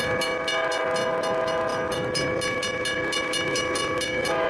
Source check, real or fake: real